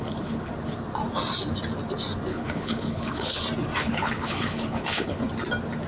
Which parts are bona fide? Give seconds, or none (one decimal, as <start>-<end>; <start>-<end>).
0.5-2.3; 3.4-3.8; 5.2-5.9